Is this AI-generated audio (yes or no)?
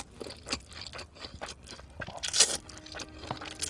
no